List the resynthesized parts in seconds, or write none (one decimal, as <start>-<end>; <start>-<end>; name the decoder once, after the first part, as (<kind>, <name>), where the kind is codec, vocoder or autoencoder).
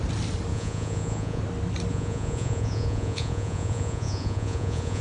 0.5-1.4 (vocoder, Vocos); 1.9-5.0